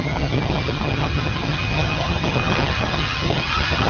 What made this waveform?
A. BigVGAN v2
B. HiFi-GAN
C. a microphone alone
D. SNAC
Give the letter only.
B